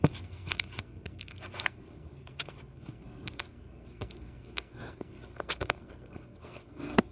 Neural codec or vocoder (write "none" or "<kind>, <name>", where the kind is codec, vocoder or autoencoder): codec, SNAC